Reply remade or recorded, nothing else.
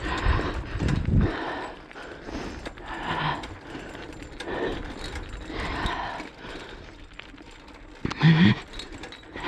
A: recorded